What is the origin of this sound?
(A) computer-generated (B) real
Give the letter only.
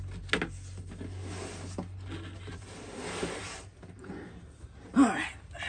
B